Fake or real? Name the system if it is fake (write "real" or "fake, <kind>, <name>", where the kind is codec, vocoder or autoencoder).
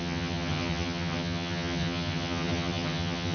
fake, vocoder, HiFi-GAN